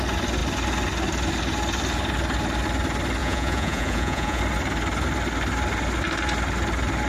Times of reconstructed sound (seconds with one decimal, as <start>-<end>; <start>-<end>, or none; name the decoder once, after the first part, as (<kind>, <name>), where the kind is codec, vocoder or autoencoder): 3.2-4.4 (vocoder, Vocos)